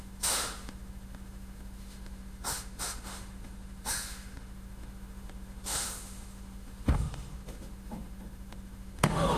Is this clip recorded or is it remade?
remade